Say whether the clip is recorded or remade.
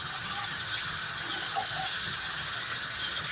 remade